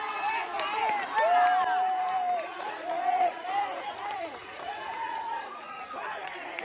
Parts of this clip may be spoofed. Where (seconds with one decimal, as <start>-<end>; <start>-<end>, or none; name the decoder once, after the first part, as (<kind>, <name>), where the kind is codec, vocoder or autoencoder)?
2.5-6.6 (vocoder, Vocos)